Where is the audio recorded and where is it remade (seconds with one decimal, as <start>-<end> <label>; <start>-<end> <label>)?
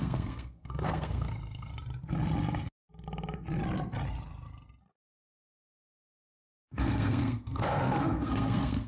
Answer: 0.0-1.7 remade; 1.7-5.9 recorded; 5.9-8.9 remade